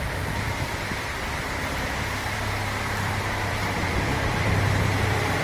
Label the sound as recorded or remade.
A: remade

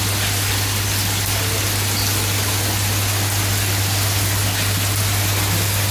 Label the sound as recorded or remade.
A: recorded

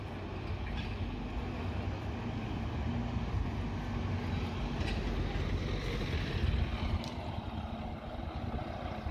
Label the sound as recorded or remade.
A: recorded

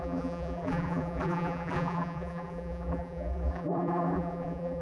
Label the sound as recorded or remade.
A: remade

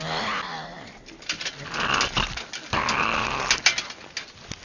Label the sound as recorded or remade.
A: recorded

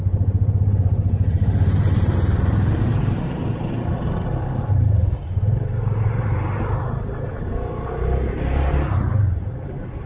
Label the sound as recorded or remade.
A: remade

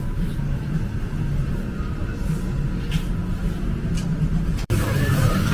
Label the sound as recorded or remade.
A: remade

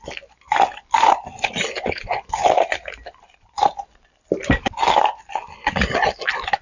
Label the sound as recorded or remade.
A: remade